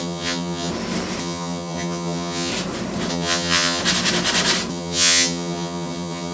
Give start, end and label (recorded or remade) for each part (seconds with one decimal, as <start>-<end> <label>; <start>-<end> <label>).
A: 0.0-0.7 remade; 0.7-1.2 recorded; 1.2-2.5 remade; 2.5-3.1 recorded; 3.1-3.8 remade; 3.8-4.7 recorded; 4.7-6.3 remade